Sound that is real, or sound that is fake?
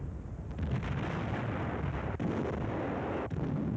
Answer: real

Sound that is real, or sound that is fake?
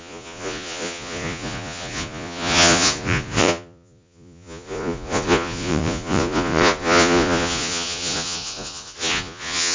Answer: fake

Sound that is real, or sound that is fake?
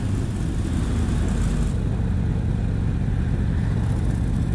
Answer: real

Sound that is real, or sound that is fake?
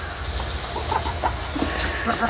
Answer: real